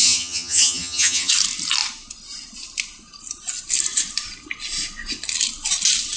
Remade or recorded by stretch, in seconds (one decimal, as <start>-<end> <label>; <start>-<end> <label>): 0.0-1.3 remade; 1.3-6.2 recorded